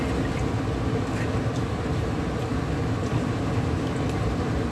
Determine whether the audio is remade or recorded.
recorded